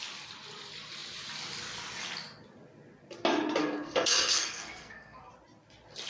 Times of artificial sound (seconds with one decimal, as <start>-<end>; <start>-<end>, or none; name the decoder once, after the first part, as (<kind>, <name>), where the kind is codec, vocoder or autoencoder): 3.6-5.3 (codec, SNAC)